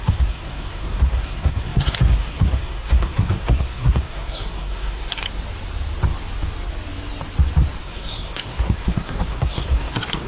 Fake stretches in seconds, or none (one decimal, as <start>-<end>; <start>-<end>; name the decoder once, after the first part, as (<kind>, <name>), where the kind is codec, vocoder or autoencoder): 0.0-5.2 (codec, SNAC); 7.8-10.3